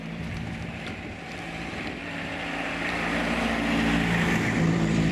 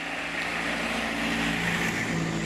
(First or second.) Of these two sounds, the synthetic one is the first